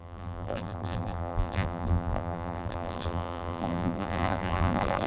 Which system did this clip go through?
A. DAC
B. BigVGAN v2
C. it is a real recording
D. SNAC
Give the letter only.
B